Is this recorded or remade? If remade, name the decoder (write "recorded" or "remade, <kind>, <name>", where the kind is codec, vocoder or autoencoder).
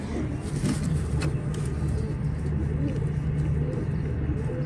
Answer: recorded